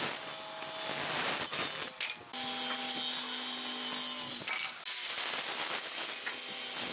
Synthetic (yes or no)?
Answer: no